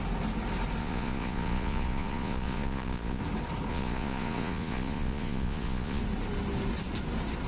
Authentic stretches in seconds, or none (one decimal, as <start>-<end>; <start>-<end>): 0.0-0.8; 3.2-3.7; 6.0-7.5